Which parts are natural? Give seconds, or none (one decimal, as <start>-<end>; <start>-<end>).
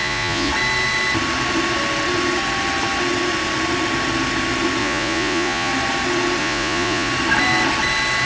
0.5-4.8; 5.7-6.4; 7.1-8.3